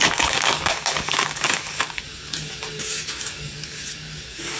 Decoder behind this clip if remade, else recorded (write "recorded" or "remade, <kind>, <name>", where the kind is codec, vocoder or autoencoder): remade, codec, DAC